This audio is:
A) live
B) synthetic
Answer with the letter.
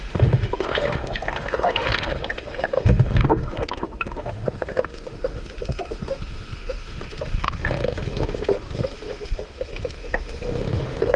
B